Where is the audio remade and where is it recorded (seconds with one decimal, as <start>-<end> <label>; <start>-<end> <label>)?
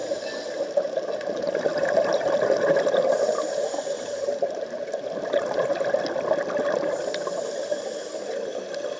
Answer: 0.0-1.6 remade; 1.6-2.1 recorded; 2.1-5.7 remade; 5.7-9.0 recorded